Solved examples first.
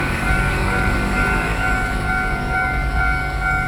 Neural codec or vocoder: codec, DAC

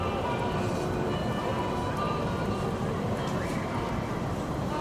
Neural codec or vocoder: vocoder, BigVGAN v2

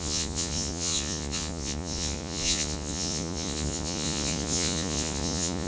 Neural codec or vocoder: vocoder, Vocos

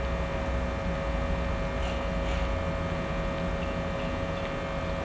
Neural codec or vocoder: none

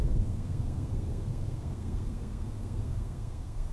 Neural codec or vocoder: codec, SNAC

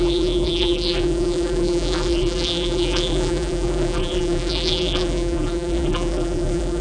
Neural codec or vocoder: vocoder, BigVGAN v2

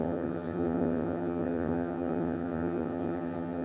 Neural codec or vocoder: vocoder, HiFi-GAN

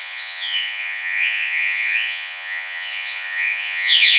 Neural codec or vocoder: vocoder, Vocos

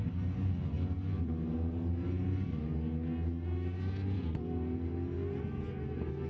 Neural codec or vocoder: none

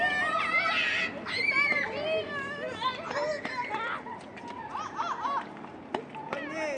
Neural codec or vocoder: none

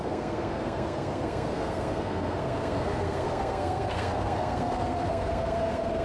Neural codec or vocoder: codec, SNAC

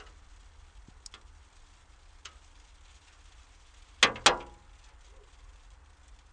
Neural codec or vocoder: none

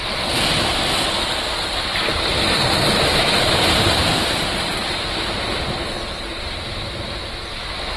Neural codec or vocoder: none